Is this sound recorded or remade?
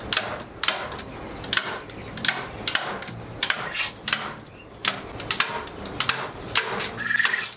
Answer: recorded